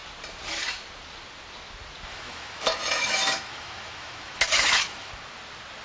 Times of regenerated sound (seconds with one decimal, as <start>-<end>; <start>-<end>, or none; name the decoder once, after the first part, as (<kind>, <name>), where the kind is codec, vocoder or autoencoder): 2.1-5.1 (autoencoder, DAC-VAE)